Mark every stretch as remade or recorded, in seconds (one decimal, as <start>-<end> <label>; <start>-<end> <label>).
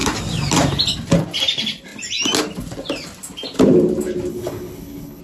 0.0-4.3 recorded; 4.3-5.2 remade